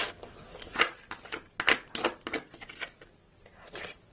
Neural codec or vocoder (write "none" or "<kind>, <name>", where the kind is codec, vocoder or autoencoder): none